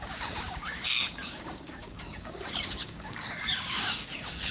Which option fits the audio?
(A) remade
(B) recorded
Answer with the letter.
A